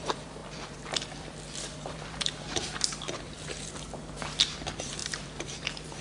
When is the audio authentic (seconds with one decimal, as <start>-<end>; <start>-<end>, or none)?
none